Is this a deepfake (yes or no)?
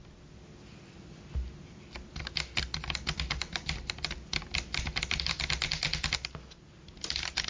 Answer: no